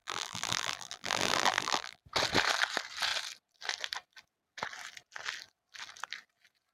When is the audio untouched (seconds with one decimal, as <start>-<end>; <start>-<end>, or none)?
2.0-6.7